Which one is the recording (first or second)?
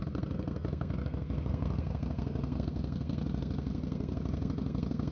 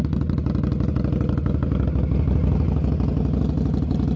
second